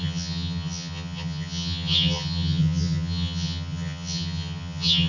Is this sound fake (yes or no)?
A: yes